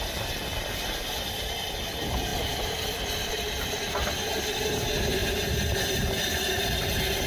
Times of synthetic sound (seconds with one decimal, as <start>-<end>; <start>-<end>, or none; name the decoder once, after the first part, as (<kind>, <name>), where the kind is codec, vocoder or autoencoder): 5.2-7.3 (vocoder, BigVGAN v2)